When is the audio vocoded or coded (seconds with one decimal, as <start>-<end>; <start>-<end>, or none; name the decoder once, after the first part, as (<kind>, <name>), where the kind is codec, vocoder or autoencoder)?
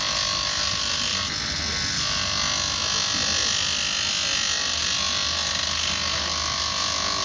none